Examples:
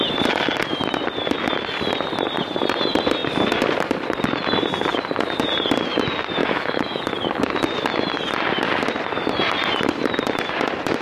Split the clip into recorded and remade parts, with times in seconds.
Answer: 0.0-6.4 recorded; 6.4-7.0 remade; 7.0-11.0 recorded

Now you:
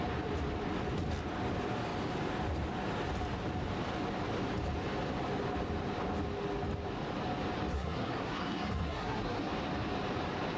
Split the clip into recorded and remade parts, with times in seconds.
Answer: 0.0-7.7 recorded; 7.7-9.5 remade; 9.5-10.6 recorded

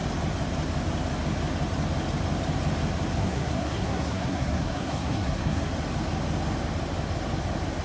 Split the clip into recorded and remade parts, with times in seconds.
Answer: 0.0-3.2 recorded; 3.2-5.6 remade; 5.6-7.8 recorded

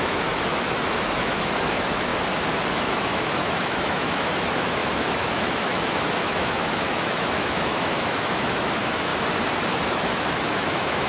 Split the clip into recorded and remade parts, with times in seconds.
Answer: 0.0-2.1 remade; 2.1-2.7 recorded; 2.7-9.1 remade; 9.1-9.9 recorded; 9.9-11.1 remade

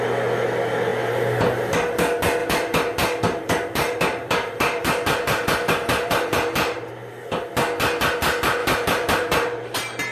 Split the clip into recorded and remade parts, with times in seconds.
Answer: 0.0-2.4 recorded; 2.4-6.9 remade; 6.9-8.6 recorded; 8.6-10.1 remade